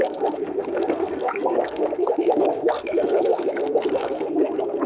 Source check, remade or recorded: remade